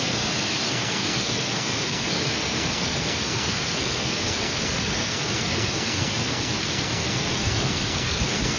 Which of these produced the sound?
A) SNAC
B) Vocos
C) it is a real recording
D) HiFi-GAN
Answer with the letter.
A